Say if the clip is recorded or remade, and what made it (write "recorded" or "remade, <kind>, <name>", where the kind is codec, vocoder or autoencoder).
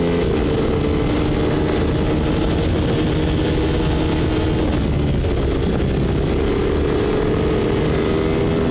recorded